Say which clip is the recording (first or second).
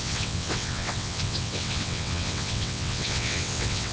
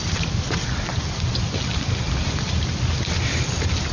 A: second